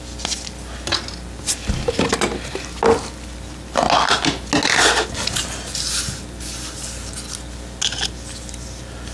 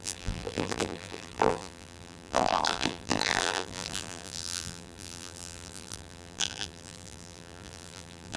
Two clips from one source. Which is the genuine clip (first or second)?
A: first